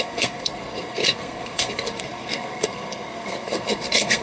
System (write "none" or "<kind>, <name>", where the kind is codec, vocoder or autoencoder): codec, SNAC